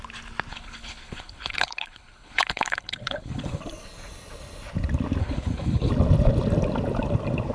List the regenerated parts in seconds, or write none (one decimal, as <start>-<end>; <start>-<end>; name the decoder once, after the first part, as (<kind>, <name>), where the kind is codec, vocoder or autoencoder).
0.5-3.6 (codec, HILCodec); 5.2-5.9